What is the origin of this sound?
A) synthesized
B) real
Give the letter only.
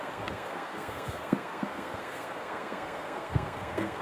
A